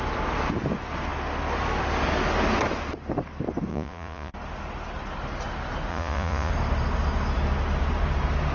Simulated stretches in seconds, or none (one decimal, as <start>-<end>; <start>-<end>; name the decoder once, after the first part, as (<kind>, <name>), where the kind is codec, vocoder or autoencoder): 3.7-4.3 (vocoder, Vocos); 5.9-6.5